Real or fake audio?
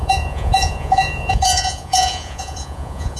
fake